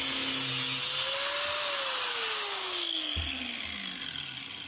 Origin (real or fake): real